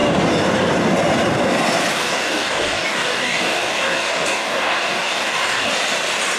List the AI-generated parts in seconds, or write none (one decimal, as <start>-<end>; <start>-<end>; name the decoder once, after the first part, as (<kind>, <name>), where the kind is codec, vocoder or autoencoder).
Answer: 1.9-5.7 (codec, DAC)